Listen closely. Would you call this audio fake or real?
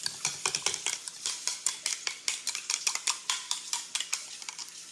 real